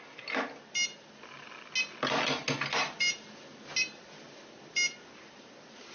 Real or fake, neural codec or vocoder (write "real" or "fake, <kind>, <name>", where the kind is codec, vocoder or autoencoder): real